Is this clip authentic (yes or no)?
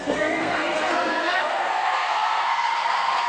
no